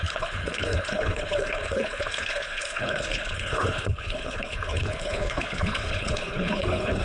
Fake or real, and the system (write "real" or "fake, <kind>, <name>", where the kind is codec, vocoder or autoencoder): fake, codec, HILCodec